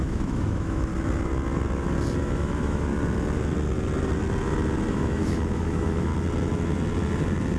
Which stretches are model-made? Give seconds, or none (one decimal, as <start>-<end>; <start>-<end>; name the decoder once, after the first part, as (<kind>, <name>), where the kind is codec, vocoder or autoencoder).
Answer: 0.0-0.9 (autoencoder, DAC-VAE); 2.2-2.9; 4.9-6.1